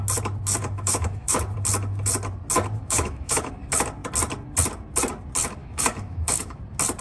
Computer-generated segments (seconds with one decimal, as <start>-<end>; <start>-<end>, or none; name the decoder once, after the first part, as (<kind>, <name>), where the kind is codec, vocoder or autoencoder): 0.6-1.4 (autoencoder, DAC-VAE); 2.8-3.5; 5.6-6.6